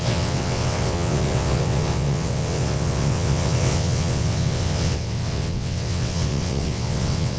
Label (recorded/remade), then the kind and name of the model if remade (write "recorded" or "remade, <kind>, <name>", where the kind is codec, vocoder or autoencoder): remade, vocoder, WaveNeXt